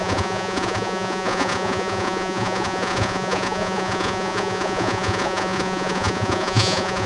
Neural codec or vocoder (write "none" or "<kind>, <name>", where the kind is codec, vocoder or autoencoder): vocoder, Vocos